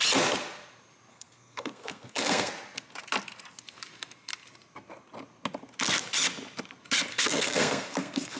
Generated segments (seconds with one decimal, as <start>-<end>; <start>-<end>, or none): 1.1-2.5; 7.1-8.4